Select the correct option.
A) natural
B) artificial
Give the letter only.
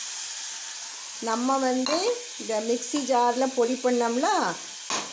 A